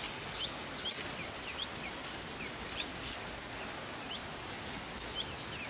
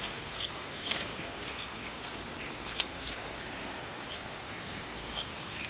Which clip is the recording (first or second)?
first